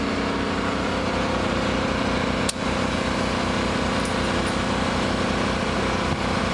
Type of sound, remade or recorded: recorded